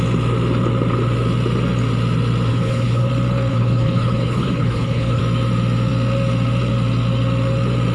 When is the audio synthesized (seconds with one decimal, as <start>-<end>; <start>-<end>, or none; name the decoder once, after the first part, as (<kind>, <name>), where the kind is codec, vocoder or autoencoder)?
2.5-3.1 (codec, HILCodec); 3.5-5.2